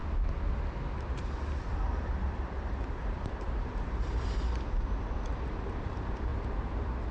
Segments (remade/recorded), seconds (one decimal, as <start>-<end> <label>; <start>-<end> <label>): 0.0-1.2 recorded; 1.2-6.3 remade; 6.3-7.1 recorded